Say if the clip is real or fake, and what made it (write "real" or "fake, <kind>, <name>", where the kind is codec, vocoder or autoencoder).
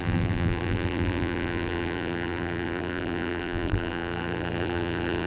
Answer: fake, vocoder, BigVGAN v2